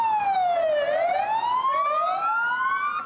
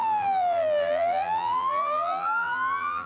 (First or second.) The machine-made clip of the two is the second